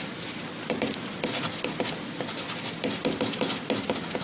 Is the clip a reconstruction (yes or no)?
no